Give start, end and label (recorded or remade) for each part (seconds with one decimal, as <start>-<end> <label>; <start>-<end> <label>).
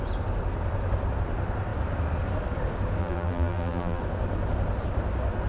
0.0-3.0 recorded; 3.0-4.0 remade; 4.0-5.5 recorded